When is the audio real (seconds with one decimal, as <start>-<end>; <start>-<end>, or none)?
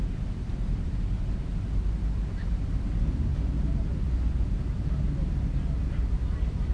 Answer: 1.5-2.9; 3.3-6.3